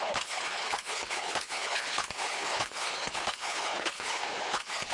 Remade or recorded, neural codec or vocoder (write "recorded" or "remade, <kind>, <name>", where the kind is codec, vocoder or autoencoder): remade, codec, HILCodec